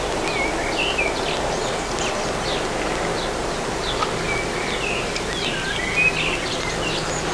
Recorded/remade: recorded